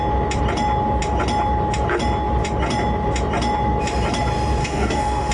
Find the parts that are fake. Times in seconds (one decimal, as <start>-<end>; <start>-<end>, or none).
4.6-5.3